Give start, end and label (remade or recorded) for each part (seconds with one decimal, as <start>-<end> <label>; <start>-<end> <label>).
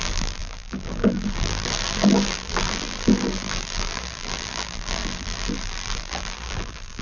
0.0-7.0 remade